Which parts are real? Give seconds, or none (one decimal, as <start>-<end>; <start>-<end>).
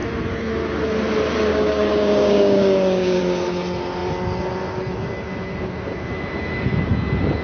0.0-1.5; 3.2-7.4